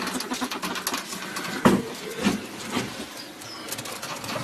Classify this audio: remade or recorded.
recorded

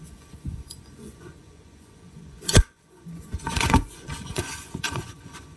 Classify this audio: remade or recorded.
remade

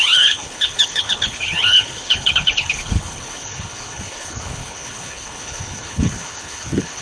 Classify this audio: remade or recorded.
remade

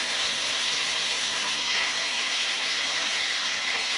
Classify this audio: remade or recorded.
remade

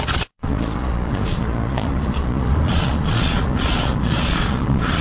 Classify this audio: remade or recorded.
remade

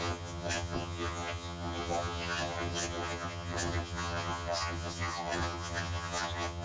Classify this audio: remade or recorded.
remade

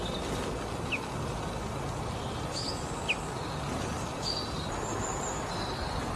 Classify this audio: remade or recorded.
recorded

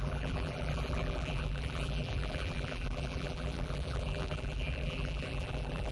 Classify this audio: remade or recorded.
remade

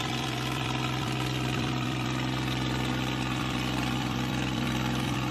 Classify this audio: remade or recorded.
remade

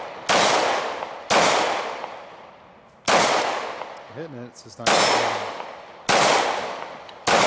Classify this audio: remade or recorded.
recorded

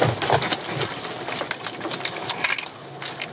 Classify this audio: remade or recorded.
recorded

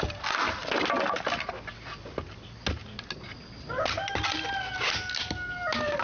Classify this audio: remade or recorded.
recorded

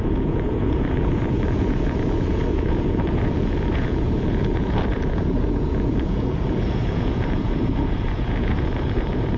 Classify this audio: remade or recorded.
remade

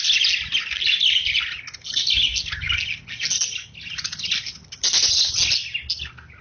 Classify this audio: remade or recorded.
recorded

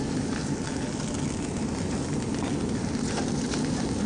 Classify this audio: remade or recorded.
recorded